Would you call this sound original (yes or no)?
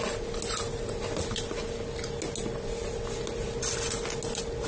yes